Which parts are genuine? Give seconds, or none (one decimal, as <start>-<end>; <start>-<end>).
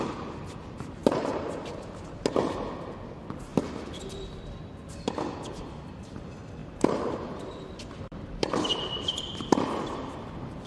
0.0-6.6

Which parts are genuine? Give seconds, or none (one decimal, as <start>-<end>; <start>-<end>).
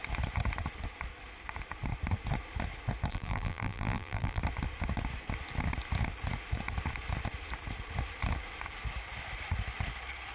0.0-3.1; 4.4-10.3